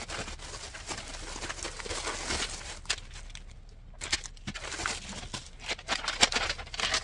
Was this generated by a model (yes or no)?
no